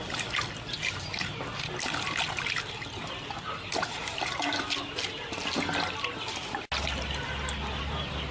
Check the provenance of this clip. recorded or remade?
recorded